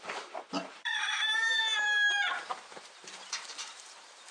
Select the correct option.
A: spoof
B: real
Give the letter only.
A